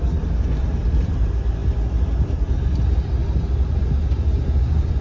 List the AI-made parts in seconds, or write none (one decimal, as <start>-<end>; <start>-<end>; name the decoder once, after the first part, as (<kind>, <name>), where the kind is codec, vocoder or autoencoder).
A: none